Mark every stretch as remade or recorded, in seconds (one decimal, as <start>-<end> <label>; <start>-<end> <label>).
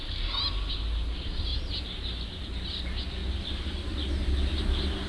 0.0-5.1 recorded